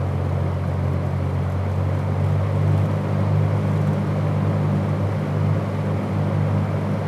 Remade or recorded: recorded